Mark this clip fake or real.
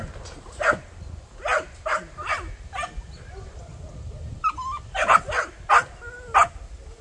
real